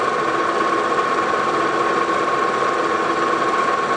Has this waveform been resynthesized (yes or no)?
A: no